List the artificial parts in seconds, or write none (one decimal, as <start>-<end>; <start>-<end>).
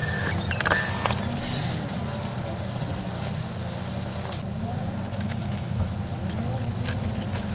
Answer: 5.1-5.9